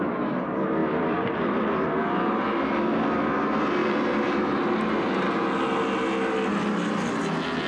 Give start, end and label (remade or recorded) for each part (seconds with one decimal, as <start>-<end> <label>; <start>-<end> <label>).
0.0-0.8 recorded; 0.8-1.9 remade; 1.9-3.8 recorded; 3.8-4.8 remade; 4.8-7.7 recorded